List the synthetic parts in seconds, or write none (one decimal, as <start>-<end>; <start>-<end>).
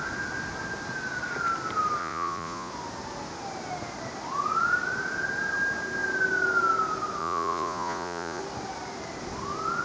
2.0-2.7; 7.2-8.4